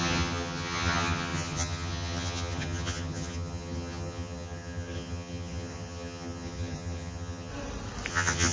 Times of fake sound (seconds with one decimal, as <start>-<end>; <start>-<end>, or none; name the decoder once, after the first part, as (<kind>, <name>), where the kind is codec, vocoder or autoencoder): 0.0-7.5 (vocoder, HiFi-GAN); 8.1-8.5